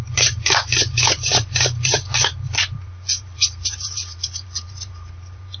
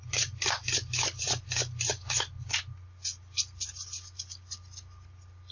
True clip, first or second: second